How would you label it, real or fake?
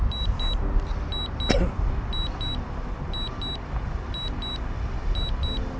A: real